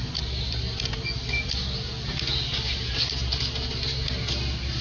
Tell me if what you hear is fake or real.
real